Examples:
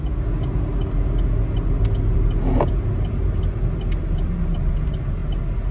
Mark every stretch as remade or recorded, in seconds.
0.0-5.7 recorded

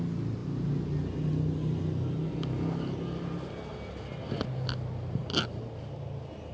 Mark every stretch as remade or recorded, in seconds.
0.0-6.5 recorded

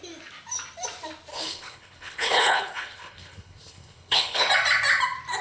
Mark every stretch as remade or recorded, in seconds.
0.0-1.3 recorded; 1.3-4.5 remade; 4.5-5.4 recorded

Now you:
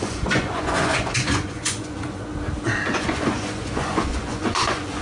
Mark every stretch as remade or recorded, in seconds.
0.0-2.3 remade; 2.3-2.9 recorded; 2.9-5.0 remade